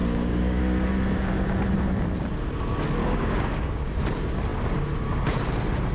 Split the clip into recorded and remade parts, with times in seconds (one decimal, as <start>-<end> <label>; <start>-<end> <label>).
0.0-0.6 remade; 0.6-3.0 recorded; 3.0-4.0 remade; 4.0-5.9 recorded